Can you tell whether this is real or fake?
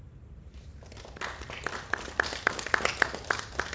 real